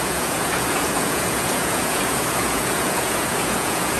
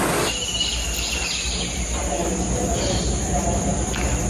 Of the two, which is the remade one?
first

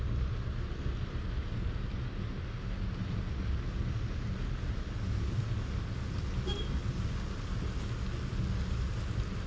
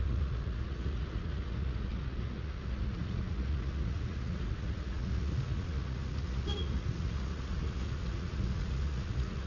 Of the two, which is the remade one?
second